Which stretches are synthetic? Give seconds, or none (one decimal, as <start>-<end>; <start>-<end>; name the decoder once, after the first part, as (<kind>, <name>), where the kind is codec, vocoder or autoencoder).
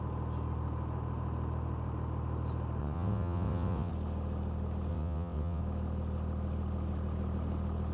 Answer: 2.8-3.9 (vocoder, WaveNeXt); 4.9-5.6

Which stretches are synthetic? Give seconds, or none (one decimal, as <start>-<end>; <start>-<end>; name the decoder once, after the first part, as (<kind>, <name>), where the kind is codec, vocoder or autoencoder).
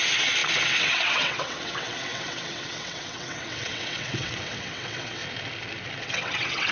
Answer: 0.0-5.2 (vocoder, WaveNeXt); 6.0-6.7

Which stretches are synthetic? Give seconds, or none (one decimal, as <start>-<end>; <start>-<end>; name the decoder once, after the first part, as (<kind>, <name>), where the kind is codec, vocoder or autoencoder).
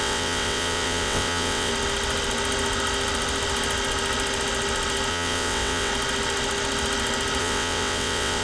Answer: 0.0-1.7 (vocoder, WaveNeXt); 5.1-5.9; 7.4-8.4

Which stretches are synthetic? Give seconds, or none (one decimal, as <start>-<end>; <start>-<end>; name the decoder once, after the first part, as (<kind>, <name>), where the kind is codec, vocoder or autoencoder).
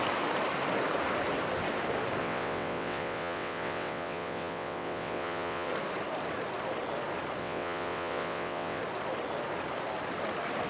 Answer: 2.2-5.7 (vocoder, WaveNeXt); 7.4-8.8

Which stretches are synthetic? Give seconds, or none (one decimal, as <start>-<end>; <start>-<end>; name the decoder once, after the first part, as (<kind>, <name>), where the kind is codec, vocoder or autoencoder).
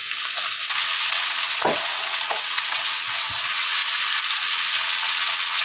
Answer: 0.8-3.8 (vocoder, WaveNeXt); 4.4-5.6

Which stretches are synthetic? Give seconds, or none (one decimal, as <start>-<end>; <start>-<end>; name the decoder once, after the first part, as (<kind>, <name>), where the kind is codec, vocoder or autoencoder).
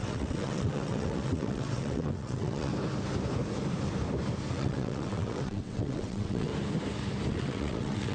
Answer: 0.0-2.7 (vocoder, WaveNeXt); 4.5-6.5; 7.3-8.1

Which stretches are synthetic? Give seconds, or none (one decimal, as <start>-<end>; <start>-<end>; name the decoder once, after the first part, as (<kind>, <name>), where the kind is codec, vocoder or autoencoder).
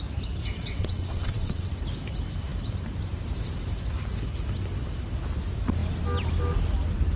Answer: 0.7-1.7 (vocoder, WaveNeXt)